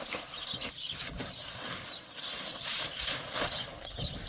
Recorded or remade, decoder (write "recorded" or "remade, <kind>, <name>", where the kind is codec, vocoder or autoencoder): recorded